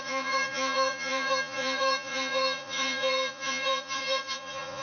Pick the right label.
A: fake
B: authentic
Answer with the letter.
A